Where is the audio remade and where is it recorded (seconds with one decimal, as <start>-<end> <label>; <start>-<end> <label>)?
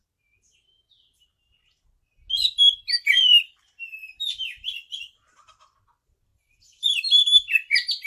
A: 0.0-3.0 recorded; 3.0-8.1 remade